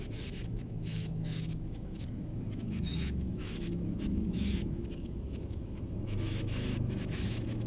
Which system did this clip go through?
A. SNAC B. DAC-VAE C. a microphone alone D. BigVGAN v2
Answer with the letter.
B